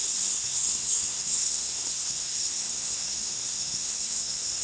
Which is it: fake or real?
fake